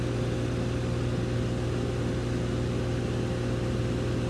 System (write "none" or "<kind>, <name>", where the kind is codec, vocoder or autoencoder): none